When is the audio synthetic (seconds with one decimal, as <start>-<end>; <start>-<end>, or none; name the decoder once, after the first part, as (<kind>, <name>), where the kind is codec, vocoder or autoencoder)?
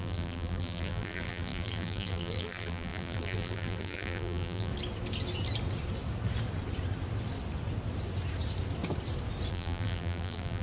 0.0-4.7 (vocoder, BigVGAN v2); 9.5-10.6